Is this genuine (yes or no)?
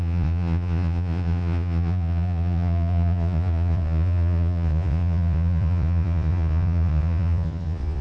no